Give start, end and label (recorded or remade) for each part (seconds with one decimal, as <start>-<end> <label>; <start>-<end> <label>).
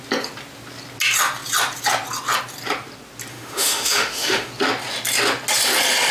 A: 0.0-3.3 recorded; 3.3-4.5 remade; 4.5-6.1 recorded